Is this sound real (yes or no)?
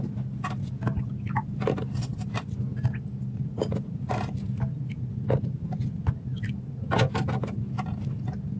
yes